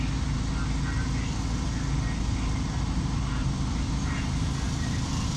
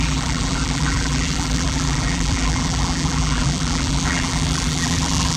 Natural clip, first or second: first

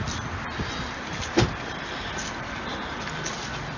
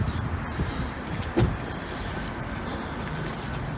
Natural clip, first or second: first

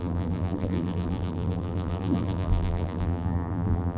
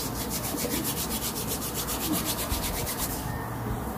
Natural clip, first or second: second